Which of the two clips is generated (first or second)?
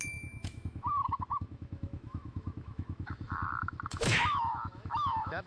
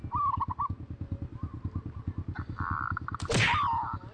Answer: first